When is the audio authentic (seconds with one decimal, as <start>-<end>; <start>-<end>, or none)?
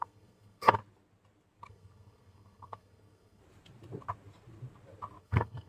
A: 0.8-1.7; 3.4-5.2